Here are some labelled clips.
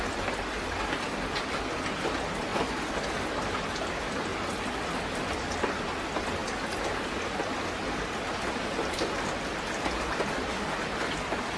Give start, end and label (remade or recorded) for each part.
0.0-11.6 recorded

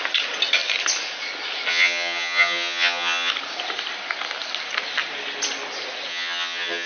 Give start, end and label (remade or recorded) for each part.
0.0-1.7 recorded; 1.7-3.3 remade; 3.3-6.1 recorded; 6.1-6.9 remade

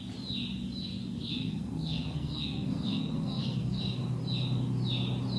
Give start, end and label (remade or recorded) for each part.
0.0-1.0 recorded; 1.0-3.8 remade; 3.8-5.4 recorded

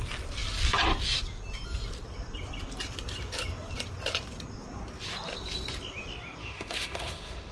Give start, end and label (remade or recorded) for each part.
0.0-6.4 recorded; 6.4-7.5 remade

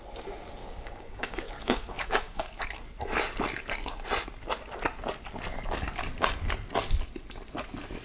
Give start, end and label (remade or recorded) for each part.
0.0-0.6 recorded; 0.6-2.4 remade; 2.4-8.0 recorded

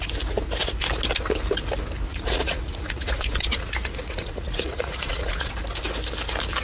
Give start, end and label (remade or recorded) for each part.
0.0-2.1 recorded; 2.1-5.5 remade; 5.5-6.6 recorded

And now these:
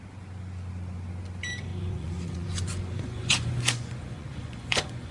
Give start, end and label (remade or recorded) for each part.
0.0-1.7 recorded; 1.7-5.1 remade